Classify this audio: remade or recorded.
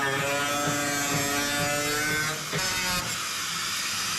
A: recorded